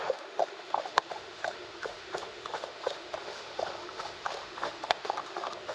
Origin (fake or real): fake